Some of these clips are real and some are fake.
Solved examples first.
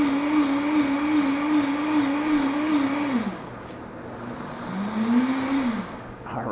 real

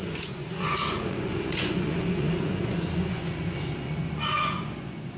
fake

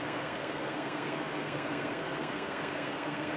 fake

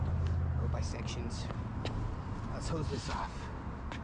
real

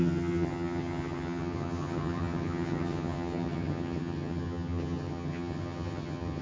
fake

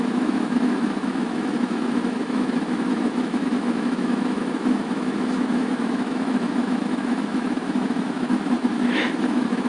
fake